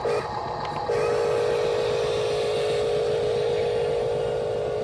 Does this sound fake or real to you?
real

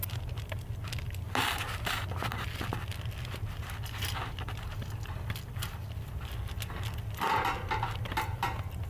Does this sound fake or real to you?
real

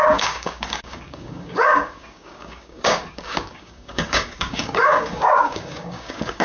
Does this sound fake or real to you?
fake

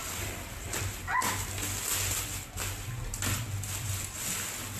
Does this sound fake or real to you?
real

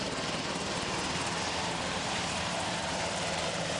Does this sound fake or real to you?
fake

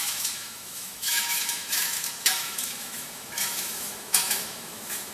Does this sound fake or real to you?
fake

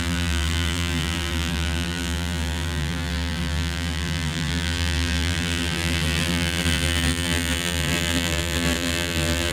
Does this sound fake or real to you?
fake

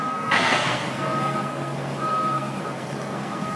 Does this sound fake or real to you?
fake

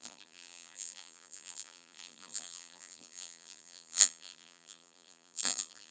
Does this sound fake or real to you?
fake